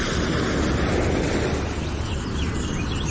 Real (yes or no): yes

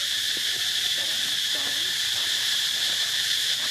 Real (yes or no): no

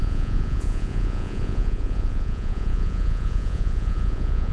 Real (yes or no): no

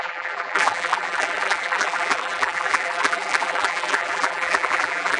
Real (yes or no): no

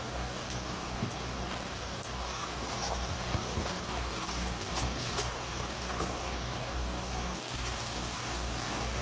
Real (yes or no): no